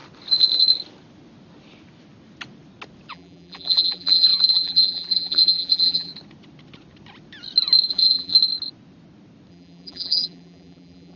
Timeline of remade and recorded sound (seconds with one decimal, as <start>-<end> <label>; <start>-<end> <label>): 0.0-3.1 recorded; 3.1-6.1 remade; 6.1-7.9 recorded; 7.9-8.3 remade; 8.3-9.5 recorded; 9.5-11.2 remade